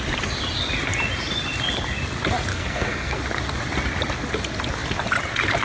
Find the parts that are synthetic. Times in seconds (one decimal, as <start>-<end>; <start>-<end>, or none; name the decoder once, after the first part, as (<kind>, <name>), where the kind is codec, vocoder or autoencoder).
2.5-3.2 (codec, SNAC)